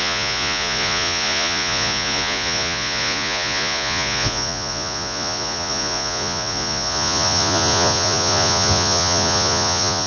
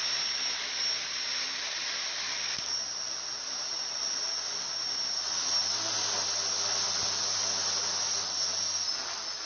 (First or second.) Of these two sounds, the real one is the second